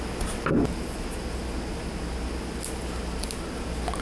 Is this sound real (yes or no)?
yes